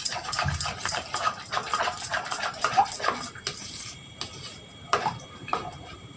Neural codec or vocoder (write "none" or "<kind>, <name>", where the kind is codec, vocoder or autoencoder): vocoder, BigVGAN v2